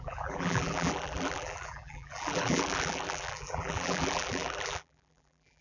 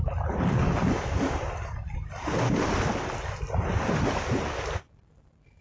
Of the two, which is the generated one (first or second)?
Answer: first